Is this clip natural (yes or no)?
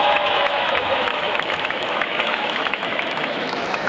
no